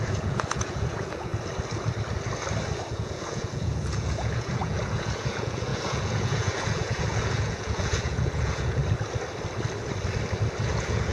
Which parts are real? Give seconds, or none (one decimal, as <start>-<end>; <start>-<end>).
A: 1.3-2.9; 8.8-10.6